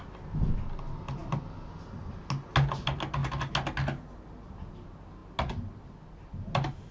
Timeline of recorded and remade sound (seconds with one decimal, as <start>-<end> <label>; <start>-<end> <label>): 0.0-6.9 recorded